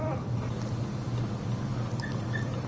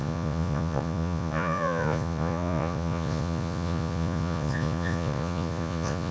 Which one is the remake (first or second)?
second